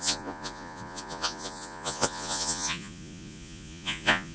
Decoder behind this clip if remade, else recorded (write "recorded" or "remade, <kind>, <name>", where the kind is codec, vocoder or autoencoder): remade, vocoder, Vocos